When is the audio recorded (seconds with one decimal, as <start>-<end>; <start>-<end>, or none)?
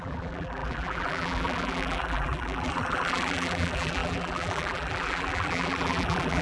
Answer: none